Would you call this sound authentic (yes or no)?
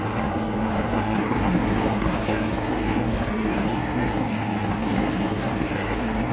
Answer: no